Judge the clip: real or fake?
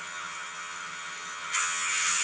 fake